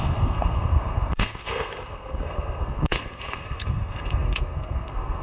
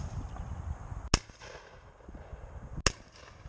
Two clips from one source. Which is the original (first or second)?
second